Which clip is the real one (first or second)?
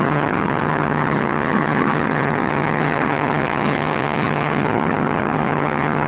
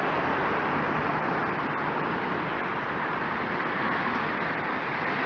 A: second